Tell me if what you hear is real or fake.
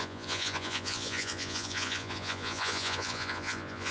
fake